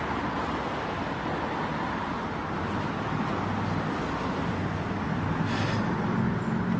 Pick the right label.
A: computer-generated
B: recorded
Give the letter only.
B